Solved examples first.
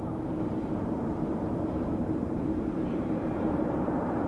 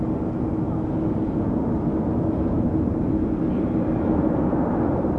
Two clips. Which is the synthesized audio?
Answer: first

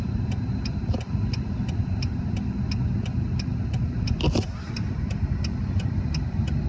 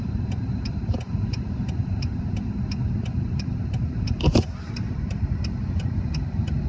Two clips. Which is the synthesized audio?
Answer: second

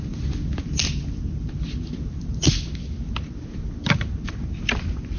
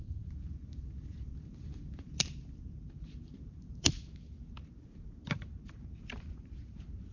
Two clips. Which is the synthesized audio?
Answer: second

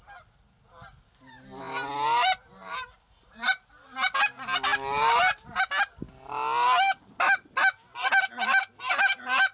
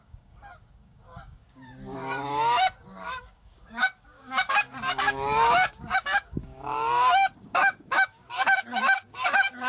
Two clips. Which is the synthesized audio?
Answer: second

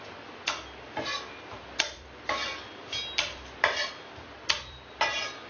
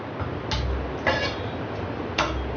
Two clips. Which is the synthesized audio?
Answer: first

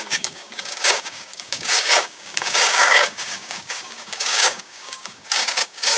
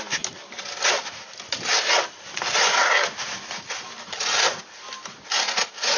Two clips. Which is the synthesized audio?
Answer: first